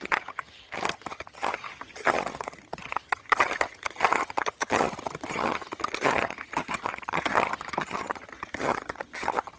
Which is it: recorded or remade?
remade